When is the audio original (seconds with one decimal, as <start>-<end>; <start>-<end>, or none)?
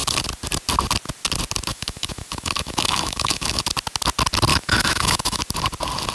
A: 0.0-1.7; 3.6-4.5; 5.4-6.1